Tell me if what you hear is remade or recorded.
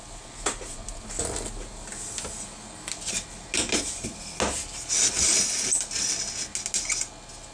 recorded